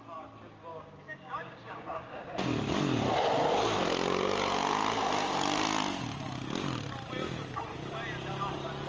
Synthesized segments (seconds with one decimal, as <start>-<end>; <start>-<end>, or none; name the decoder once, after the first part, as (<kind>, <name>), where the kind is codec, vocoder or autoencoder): 0.7-2.3 (codec, DAC)